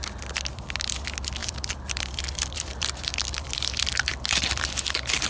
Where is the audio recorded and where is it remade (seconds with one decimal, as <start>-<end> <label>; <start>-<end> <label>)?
0.0-1.4 recorded; 1.4-4.6 remade; 4.6-5.3 recorded